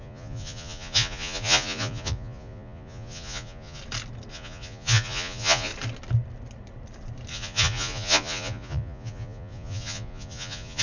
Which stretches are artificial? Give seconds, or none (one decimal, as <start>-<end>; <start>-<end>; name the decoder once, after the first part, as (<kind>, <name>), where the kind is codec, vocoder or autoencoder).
0.0-3.8 (vocoder, Vocos); 4.3-5.7; 7.3-10.8